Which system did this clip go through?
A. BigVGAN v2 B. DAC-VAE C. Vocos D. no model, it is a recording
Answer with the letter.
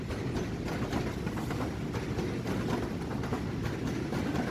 D